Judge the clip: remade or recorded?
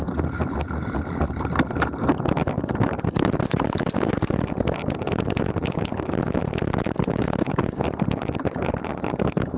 remade